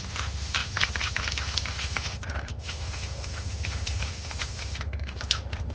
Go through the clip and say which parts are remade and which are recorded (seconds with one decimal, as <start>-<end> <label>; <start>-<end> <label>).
0.0-5.7 remade